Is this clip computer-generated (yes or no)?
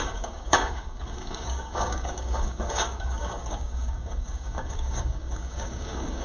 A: yes